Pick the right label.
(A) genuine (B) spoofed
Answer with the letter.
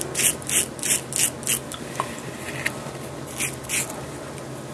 A